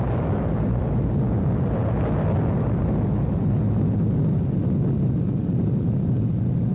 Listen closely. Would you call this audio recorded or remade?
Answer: recorded